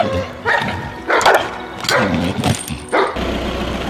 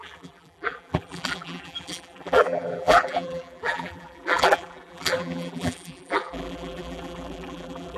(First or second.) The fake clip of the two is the second